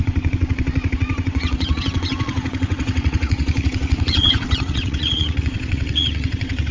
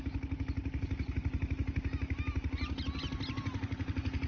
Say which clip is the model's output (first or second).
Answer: first